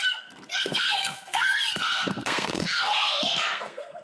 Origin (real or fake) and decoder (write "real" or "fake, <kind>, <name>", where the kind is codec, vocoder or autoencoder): fake, codec, SNAC